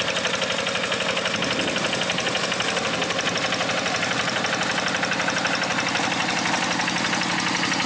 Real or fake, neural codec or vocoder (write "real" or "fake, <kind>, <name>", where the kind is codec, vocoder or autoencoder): real